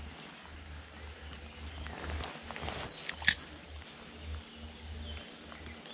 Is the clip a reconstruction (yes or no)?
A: no